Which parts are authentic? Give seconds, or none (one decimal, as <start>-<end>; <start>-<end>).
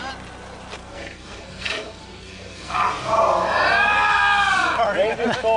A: 0.0-0.8; 2.9-5.6